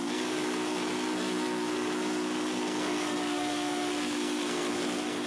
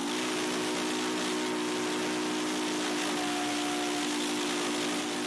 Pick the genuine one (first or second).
second